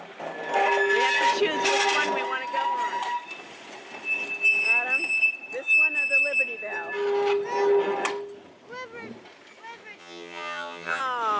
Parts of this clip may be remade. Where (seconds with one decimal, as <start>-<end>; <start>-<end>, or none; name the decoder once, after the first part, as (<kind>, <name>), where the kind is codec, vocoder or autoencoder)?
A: 10.0-11.0 (vocoder, HiFi-GAN)

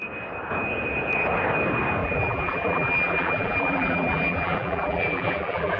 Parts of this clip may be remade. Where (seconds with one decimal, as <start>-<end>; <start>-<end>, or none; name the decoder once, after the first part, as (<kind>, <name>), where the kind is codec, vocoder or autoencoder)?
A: 2.0-5.8 (vocoder, BigVGAN v2)

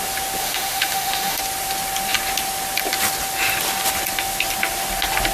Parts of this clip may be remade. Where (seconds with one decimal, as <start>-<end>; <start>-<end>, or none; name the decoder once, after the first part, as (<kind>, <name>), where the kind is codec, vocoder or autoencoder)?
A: 0.4-1.4 (autoencoder, DAC-VAE)

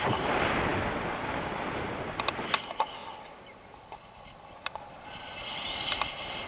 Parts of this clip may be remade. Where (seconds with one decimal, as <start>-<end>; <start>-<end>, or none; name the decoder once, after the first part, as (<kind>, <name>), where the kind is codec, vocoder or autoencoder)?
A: 3.0-6.5 (vocoder, BigVGAN v2)

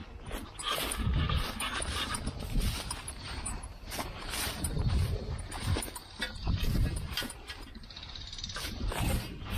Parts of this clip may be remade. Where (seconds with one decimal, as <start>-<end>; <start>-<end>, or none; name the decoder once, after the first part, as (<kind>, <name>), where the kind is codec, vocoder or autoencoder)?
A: 1.8-9.6 (vocoder, BigVGAN v2)

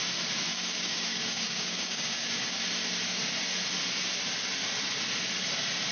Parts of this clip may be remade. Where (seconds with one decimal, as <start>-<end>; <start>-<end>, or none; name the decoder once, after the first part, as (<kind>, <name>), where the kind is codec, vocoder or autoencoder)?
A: 0.5-2.6 (codec, DAC)

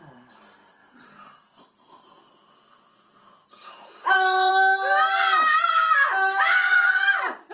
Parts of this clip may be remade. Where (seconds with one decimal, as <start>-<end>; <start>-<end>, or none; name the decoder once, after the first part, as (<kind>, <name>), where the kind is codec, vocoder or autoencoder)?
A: 0.8-4.5 (vocoder, Vocos)